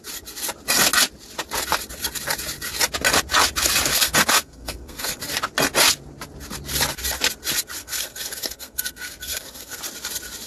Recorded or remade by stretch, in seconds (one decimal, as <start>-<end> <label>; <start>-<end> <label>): 0.0-3.9 recorded; 3.9-5.2 remade; 5.2-7.8 recorded; 7.8-9.8 remade; 9.8-10.5 recorded